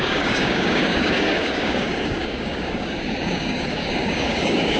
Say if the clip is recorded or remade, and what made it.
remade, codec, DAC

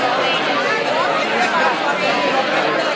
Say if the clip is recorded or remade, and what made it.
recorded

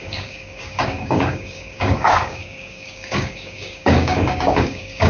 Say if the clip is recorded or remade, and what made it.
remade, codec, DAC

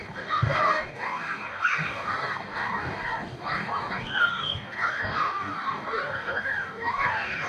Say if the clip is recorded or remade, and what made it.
remade, codec, DAC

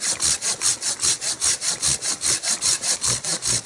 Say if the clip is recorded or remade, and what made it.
recorded